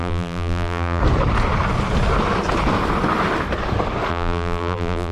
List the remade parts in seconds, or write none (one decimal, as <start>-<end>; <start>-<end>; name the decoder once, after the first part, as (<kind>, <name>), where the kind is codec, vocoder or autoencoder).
0.0-1.0 (vocoder, BigVGAN v2); 4.1-5.1